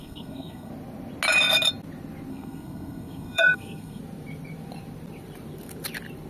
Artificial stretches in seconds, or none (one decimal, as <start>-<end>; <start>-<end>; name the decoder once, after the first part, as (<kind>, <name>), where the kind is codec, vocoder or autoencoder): 0.0-0.7 (codec, SNAC); 2.3-4.0